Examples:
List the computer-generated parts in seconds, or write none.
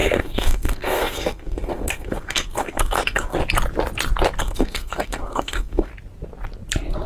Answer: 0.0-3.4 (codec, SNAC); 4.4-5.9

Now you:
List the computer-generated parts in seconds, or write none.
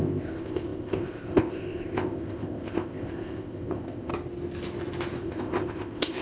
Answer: 0.0-4.1 (codec, ZipCodec); 5.2-6.2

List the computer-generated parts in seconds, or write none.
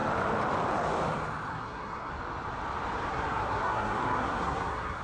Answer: 1.5-2.1 (codec, SNAC); 3.1-5.0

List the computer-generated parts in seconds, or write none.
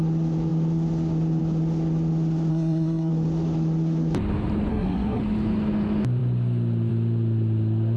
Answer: 2.5-3.1 (codec, SNAC); 4.7-5.2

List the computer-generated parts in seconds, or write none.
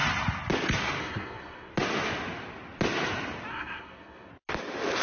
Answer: 1.0-1.7 (codec, SNAC); 3.5-4.3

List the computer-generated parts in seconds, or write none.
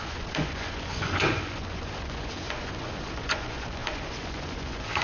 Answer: 0.0-5.0 (vocoder, Vocos)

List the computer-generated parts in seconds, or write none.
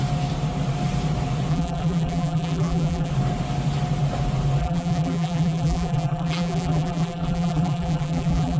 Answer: 1.5-3.1 (vocoder, BigVGAN v2); 4.6-8.6